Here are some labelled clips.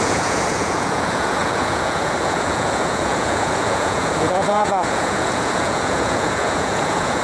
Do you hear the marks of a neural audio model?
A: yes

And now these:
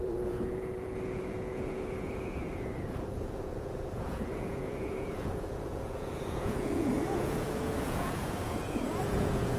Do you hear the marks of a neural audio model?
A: yes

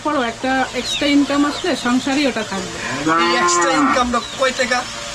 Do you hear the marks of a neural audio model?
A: no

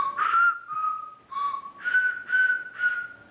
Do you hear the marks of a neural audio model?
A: no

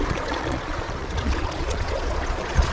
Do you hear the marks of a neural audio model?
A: yes